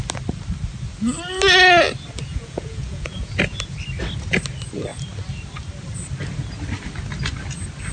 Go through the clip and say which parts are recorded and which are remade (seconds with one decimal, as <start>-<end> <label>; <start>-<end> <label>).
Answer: 0.0-2.3 recorded; 2.3-3.3 remade; 3.3-7.9 recorded